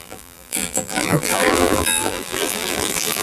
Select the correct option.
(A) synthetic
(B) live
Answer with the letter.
A